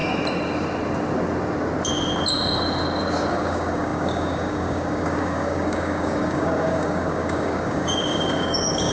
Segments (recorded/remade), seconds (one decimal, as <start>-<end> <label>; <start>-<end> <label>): 0.0-3.3 recorded; 3.3-8.9 remade